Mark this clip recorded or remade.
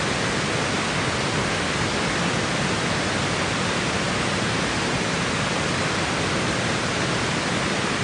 recorded